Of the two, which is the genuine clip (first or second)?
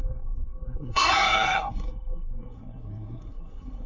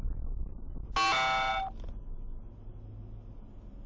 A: second